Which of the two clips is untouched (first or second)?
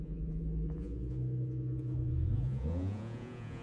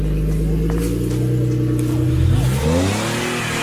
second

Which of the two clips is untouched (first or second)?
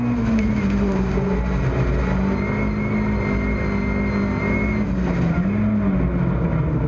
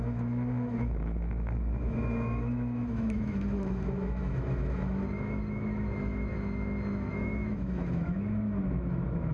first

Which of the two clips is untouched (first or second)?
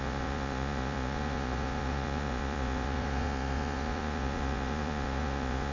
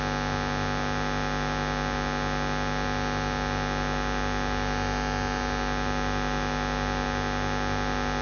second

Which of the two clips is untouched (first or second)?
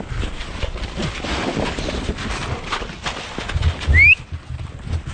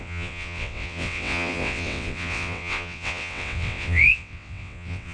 first